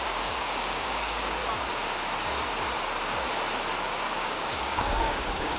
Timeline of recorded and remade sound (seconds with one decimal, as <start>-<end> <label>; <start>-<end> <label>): 0.0-1.4 remade; 1.4-3.8 recorded; 3.8-5.6 remade